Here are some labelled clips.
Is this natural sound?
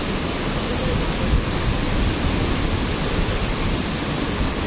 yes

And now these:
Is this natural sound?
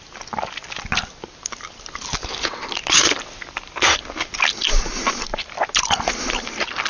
yes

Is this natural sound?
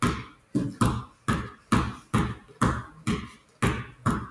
yes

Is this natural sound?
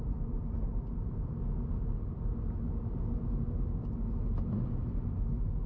yes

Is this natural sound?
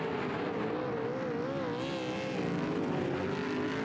yes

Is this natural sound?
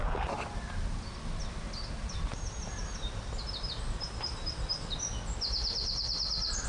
yes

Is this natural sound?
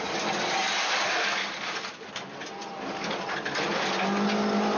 yes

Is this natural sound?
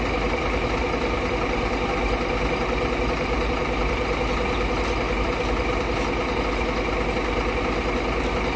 yes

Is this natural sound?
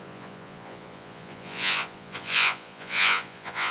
no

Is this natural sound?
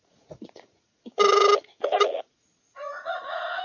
no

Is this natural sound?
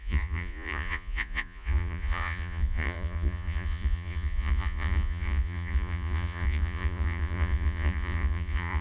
no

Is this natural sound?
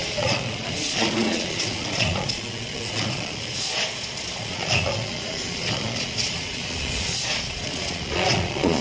no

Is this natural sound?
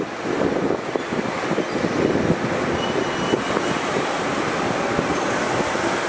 yes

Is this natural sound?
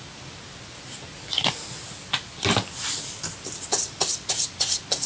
yes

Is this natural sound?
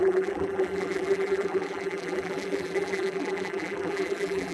no